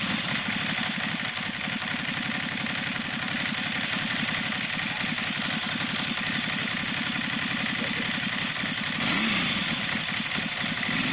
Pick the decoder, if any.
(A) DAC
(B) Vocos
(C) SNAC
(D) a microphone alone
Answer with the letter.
D